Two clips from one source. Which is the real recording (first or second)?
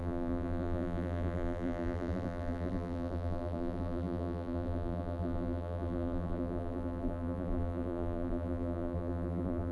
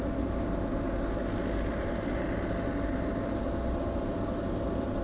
second